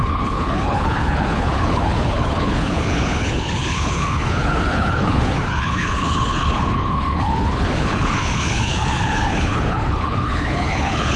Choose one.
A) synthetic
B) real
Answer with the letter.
A